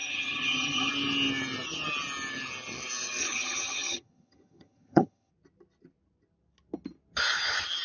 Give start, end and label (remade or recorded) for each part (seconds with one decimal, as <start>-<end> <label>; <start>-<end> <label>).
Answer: 0.0-0.9 remade; 0.9-3.2 recorded; 3.2-5.3 remade; 5.3-7.8 recorded